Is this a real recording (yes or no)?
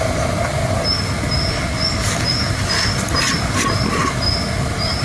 yes